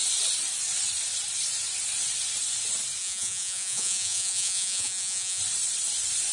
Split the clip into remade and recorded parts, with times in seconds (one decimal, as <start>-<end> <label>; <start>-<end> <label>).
0.0-3.0 recorded; 3.0-5.4 remade; 5.4-6.3 recorded